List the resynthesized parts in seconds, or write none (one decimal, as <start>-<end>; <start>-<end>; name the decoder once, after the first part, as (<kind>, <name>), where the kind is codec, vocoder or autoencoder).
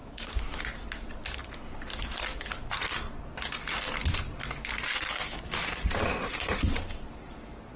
0.0-0.6 (autoencoder, DAC-VAE); 4.9-5.5